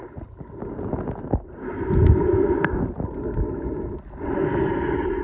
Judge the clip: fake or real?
real